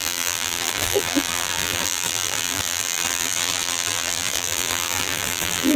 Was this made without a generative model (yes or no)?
no